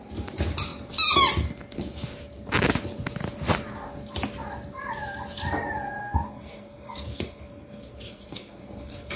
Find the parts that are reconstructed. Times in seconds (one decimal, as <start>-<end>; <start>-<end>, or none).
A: 6.0-9.2